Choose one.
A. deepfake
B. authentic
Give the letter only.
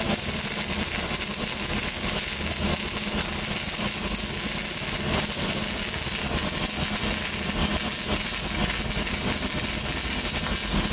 B